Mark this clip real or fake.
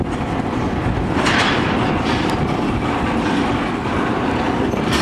real